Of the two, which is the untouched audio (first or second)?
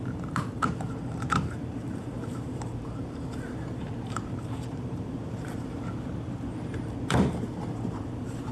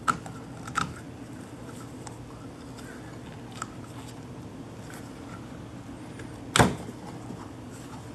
second